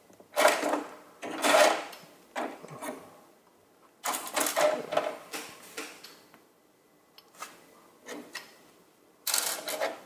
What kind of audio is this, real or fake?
real